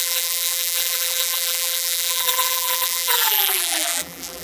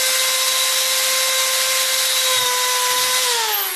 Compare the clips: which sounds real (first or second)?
second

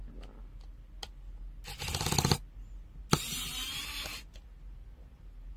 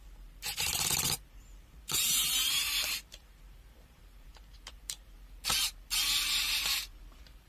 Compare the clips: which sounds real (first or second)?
first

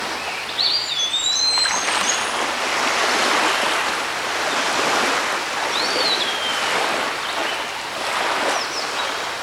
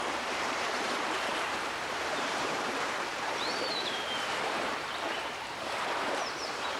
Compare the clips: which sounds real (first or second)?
first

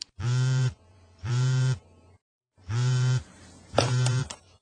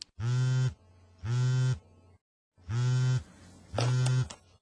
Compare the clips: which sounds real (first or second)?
second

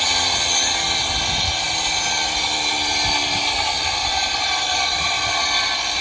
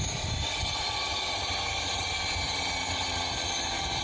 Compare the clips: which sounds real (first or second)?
first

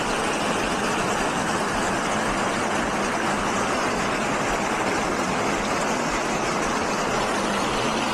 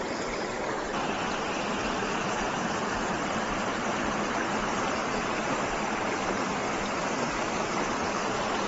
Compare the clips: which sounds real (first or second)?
first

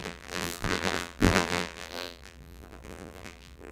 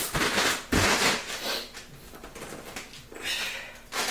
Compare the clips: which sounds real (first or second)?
second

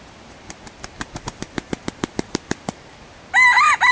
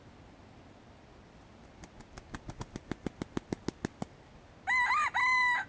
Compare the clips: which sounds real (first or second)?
second